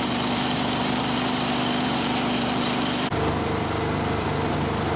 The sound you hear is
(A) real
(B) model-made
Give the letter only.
B